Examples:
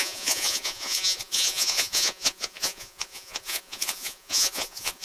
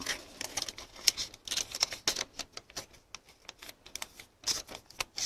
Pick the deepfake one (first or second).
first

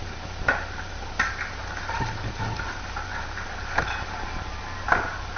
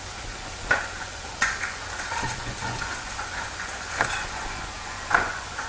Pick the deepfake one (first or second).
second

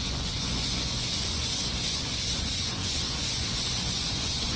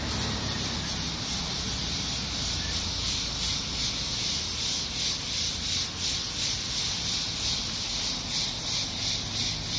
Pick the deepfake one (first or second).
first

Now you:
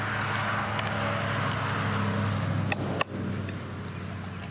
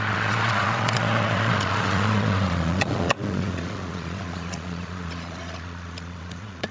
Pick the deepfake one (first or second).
second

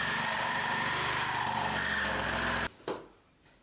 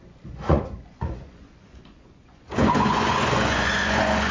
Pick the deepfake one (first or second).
second